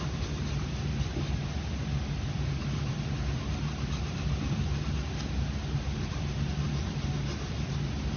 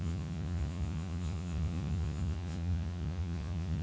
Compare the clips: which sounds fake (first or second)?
second